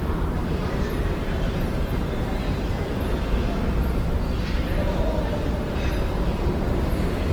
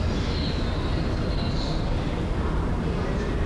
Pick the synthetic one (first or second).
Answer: first